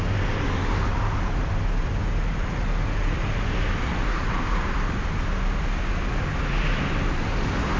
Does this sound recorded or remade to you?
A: recorded